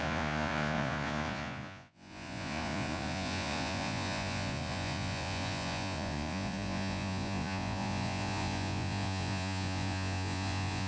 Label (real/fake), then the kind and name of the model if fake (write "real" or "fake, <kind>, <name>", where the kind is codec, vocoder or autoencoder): fake, vocoder, Vocos